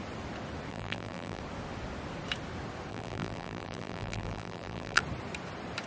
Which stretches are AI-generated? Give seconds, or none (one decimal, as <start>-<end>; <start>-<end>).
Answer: 0.7-1.4; 2.9-5.0